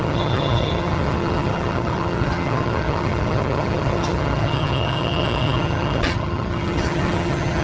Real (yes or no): no